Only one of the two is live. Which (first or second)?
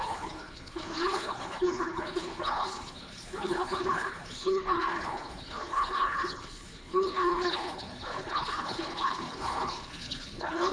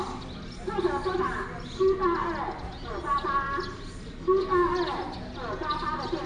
second